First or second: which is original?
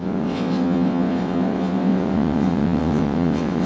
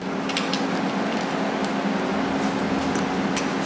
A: second